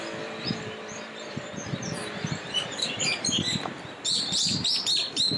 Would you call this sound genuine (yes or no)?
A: no